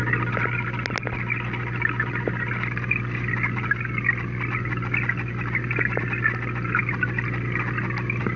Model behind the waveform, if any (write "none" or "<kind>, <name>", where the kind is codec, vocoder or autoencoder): none